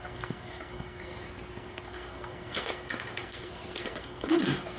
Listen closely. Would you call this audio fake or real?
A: fake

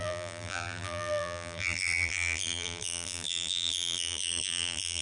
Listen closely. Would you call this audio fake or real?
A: fake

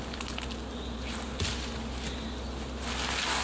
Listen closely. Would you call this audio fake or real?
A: real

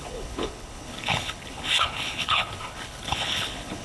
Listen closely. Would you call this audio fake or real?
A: fake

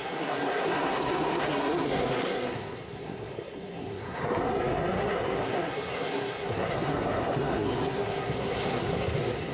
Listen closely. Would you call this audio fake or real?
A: fake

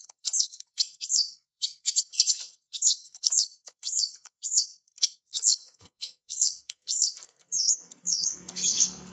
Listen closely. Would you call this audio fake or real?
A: fake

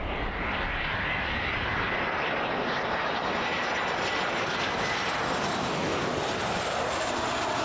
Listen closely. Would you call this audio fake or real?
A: real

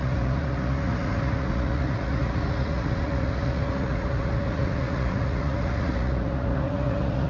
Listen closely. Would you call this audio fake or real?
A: fake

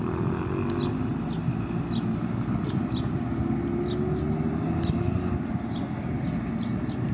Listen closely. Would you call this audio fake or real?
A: real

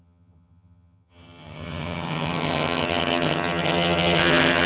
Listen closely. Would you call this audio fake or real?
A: fake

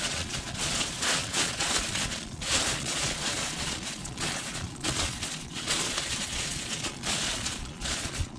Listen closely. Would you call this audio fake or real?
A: fake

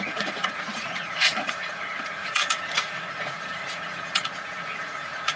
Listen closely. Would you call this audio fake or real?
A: fake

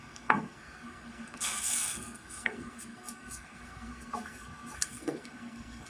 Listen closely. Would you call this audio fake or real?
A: fake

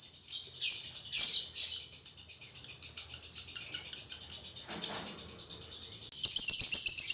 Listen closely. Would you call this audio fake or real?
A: real